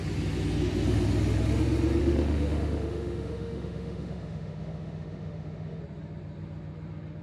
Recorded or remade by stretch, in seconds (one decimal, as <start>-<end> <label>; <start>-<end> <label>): 0.0-2.0 recorded; 2.0-5.8 remade; 5.8-7.2 recorded